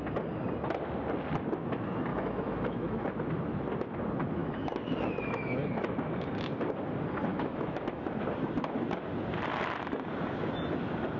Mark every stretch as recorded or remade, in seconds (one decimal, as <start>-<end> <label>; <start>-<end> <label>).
0.0-2.1 recorded; 2.1-3.1 remade; 3.1-4.4 recorded; 4.4-5.7 remade; 5.7-7.3 recorded; 7.3-8.2 remade; 8.2-11.2 recorded